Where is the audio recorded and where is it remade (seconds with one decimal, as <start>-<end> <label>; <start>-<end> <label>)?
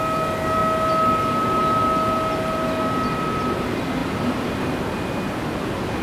0.0-6.0 recorded